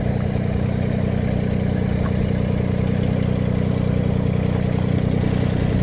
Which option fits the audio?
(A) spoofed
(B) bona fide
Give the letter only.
B